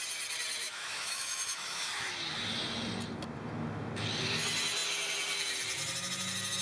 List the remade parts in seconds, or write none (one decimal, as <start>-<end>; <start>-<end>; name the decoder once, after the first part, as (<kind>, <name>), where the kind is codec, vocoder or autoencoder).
0.6-2.1 (autoencoder, DAC-VAE)